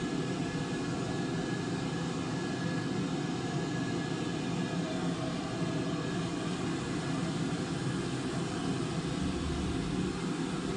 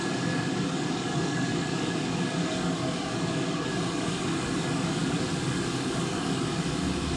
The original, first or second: first